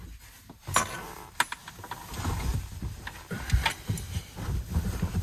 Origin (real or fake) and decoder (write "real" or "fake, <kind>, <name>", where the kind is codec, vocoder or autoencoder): real